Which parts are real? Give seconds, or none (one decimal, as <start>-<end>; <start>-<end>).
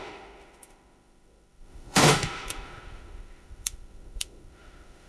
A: none